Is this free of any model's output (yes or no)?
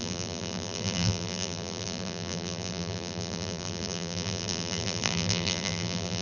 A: no